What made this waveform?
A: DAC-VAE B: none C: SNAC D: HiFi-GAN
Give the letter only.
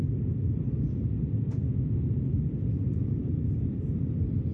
B